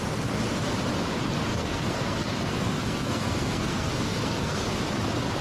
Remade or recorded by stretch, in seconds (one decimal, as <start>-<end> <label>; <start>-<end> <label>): 0.0-1.5 recorded; 1.5-4.7 remade; 4.7-5.4 recorded